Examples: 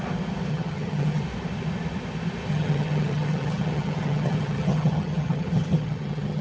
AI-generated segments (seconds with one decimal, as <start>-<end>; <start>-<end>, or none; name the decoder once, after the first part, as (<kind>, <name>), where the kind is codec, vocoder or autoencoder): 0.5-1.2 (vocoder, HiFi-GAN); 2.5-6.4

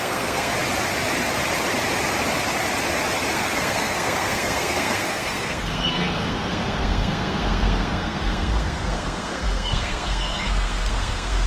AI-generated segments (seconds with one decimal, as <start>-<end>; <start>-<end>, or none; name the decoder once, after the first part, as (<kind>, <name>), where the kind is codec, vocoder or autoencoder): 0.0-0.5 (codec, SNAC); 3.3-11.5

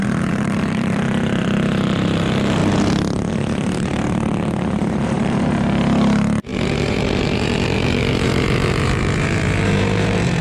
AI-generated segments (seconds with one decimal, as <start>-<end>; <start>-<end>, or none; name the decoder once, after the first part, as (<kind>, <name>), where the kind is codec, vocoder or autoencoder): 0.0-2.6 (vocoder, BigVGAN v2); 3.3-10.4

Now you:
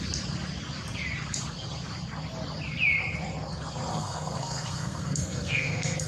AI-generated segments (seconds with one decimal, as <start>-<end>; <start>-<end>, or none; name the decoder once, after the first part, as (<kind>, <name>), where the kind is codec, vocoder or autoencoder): 3.9-6.1 (codec, SNAC)

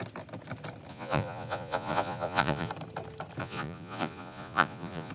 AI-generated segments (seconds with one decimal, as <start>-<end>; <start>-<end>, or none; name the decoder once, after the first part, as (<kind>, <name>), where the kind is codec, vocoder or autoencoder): 0.9-2.7 (vocoder, Vocos); 3.4-5.1